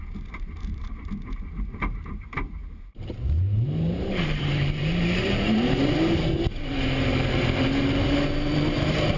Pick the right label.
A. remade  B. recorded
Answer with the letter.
A